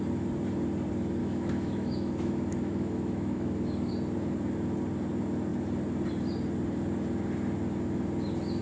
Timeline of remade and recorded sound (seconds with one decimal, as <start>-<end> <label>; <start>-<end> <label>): 0.0-1.2 recorded; 1.2-3.9 remade; 3.9-8.6 recorded